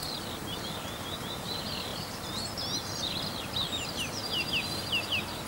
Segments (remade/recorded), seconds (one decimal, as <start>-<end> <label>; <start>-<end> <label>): 0.0-5.5 recorded

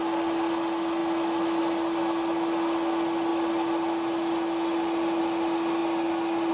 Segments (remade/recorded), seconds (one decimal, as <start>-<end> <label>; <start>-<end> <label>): 0.0-6.5 recorded